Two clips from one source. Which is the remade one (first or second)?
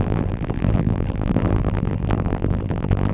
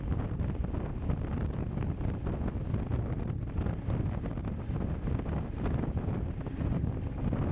first